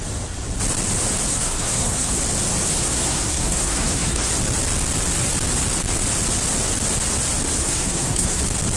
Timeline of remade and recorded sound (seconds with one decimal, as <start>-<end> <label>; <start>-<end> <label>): 0.0-1.3 recorded; 1.3-2.2 remade; 2.2-2.7 recorded; 2.7-4.3 remade; 4.3-7.6 recorded; 7.6-8.4 remade; 8.4-8.8 recorded